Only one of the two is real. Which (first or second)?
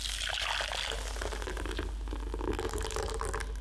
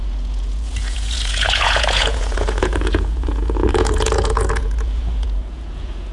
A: first